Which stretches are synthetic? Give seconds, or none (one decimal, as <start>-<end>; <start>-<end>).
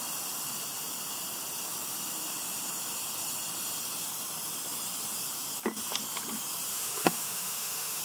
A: 6.7-8.0